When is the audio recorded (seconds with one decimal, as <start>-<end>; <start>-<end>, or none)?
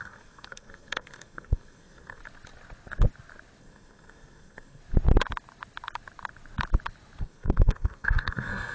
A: 2.2-3.6; 4.8-7.2